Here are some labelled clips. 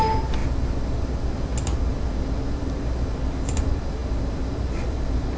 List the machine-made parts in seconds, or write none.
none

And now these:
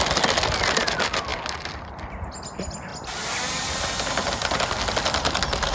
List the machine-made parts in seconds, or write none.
none

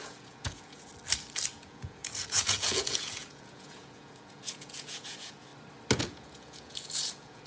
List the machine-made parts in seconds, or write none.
0.0-0.9 (vocoder, Vocos); 1.5-5.5; 6.0-7.5

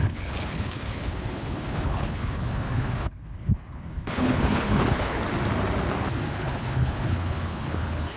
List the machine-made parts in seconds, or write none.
0.0-5.2 (codec, HILCodec); 6.3-8.2

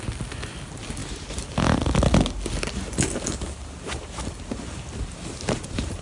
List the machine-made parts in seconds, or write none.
none

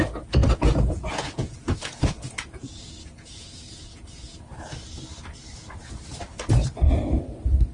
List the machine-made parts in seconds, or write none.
0.4-4.4 (vocoder, Vocos)

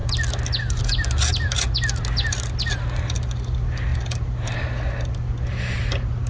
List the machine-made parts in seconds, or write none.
none

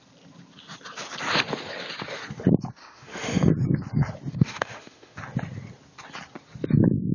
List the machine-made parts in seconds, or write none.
2.8-3.5 (autoencoder, DAC-VAE); 4.3-5.2